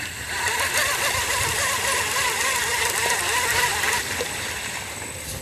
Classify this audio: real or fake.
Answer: fake